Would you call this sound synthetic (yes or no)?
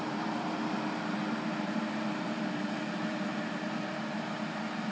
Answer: yes